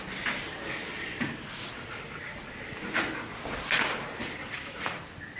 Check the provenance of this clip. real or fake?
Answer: real